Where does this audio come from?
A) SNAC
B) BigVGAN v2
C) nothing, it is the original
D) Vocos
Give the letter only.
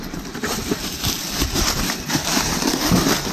B